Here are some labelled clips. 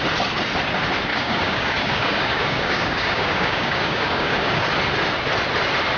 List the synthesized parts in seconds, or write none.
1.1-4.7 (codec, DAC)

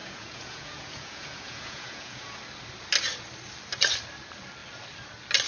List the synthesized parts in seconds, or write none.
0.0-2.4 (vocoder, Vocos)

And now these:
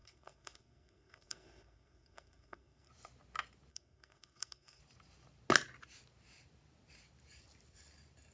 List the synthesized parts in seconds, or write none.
0.0-2.9 (codec, SNAC); 3.7-4.8